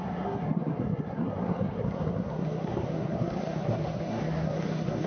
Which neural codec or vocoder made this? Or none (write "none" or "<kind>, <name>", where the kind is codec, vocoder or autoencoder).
codec, SNAC